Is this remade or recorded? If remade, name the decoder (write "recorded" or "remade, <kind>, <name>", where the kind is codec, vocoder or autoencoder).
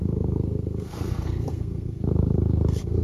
remade, codec, SNAC